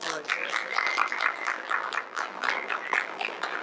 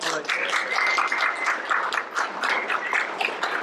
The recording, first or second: second